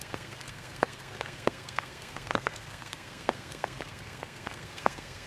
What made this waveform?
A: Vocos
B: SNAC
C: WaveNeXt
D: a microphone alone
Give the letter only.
B